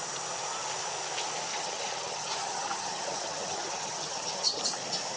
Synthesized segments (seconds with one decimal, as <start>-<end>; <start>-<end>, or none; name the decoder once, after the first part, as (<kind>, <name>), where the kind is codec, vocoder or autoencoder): 1.5-4.6 (vocoder, HiFi-GAN)